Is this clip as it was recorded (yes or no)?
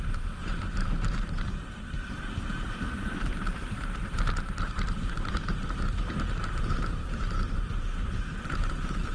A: no